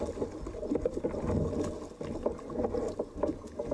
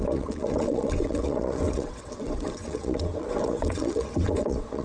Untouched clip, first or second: first